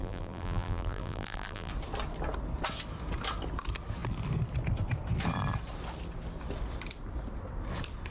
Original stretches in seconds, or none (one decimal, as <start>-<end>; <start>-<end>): 1.7-8.1